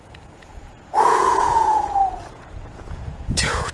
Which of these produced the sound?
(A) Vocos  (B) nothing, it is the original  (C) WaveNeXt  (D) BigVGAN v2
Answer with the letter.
A